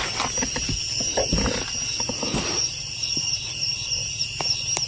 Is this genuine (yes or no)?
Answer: yes